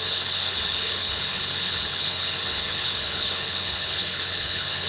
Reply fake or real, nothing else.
fake